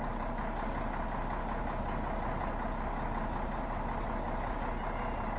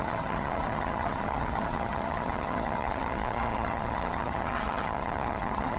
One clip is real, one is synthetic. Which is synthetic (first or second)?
second